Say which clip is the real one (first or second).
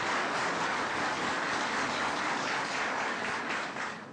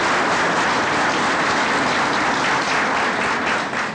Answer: second